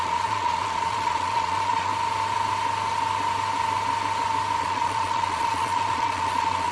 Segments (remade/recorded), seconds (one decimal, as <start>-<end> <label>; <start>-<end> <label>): 0.0-1.9 remade; 1.9-4.6 recorded; 4.6-6.7 remade